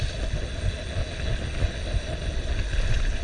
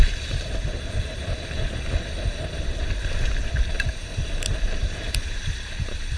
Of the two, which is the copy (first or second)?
second